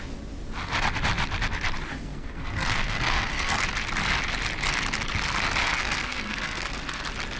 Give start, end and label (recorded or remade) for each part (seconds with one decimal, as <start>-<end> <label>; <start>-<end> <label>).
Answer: 0.0-1.9 recorded; 1.9-3.6 remade; 3.6-5.6 recorded; 5.6-7.0 remade; 7.0-7.4 recorded